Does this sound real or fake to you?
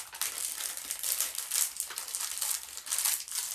real